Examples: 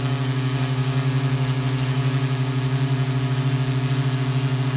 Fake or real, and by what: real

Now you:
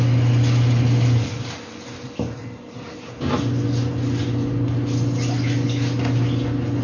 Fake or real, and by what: real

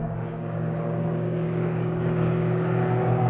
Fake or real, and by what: fake, codec, DAC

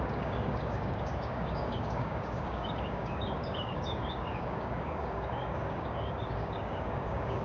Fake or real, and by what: fake, codec, DAC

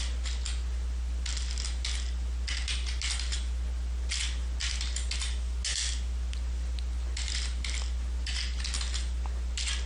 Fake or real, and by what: real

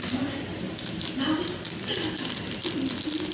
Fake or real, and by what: real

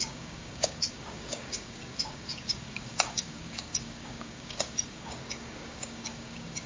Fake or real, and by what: fake, codec, DAC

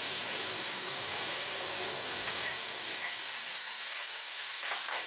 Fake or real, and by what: fake, codec, DAC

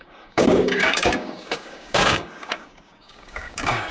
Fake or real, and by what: fake, codec, DAC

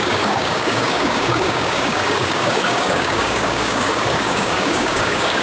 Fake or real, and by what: fake, codec, DAC